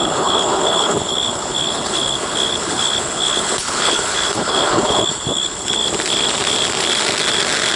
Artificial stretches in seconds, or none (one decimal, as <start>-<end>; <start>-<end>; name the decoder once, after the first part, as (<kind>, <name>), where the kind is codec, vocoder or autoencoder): 0.0-5.8 (codec, HILCodec)